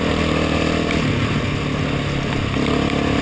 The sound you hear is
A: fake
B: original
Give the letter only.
B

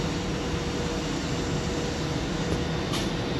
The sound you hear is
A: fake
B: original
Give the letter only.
B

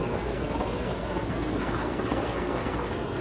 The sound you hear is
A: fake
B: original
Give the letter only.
A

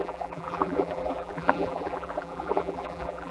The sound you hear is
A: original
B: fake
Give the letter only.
B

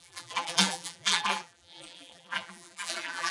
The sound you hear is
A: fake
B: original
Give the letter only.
A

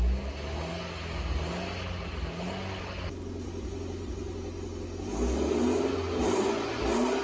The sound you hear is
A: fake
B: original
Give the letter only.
B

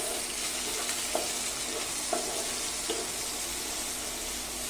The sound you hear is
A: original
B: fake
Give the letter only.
A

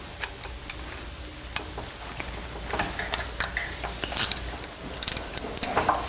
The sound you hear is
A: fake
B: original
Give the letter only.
B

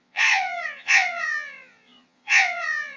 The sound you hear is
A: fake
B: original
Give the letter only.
A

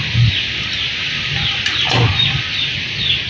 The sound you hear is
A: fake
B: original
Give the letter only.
B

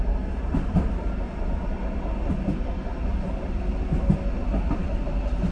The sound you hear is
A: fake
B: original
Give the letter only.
B